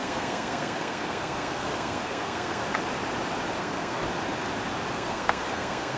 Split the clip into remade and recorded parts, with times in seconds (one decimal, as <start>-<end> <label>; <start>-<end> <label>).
0.0-2.6 remade; 2.6-3.6 recorded; 3.6-4.0 remade; 4.0-4.9 recorded; 4.9-6.0 remade